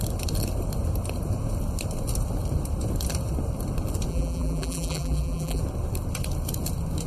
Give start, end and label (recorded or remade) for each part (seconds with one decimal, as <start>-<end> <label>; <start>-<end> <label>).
0.0-4.1 recorded; 4.1-5.6 remade; 5.6-7.1 recorded